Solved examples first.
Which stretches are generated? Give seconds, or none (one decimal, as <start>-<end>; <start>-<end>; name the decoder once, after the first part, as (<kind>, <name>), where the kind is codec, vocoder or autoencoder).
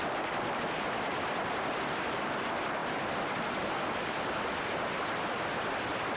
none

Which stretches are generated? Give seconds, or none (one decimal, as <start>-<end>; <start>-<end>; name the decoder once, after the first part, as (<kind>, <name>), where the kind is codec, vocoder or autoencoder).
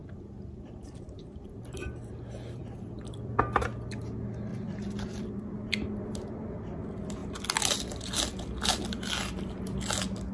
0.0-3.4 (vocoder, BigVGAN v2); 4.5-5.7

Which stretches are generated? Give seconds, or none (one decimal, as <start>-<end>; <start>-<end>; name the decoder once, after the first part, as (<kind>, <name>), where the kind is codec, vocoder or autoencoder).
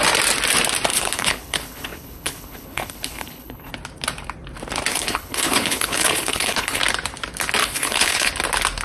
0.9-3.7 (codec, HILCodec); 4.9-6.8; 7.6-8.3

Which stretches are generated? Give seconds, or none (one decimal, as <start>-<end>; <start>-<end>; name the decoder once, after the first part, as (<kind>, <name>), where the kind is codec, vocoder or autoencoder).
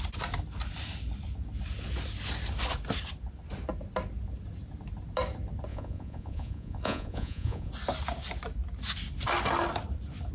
5.7-7.7 (vocoder, Vocos)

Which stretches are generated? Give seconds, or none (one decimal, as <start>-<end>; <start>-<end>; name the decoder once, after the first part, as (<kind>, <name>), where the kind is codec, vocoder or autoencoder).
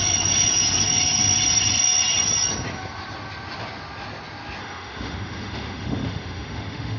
4.6-7.0 (autoencoder, DAC-VAE)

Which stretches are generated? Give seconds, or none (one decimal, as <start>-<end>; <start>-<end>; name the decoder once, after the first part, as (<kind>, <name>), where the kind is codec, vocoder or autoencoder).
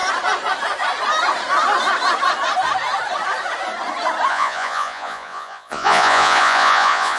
4.3-7.2 (vocoder, Vocos)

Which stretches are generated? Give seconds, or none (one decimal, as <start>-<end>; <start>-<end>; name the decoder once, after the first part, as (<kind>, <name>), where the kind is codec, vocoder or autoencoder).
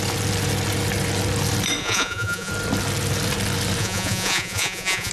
1.8-2.5 (vocoder, Vocos); 3.8-5.1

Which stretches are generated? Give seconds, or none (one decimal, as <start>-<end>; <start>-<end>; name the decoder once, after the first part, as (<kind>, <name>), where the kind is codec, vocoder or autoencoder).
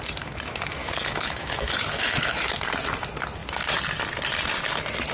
0.8-2.5 (autoencoder, DAC-VAE)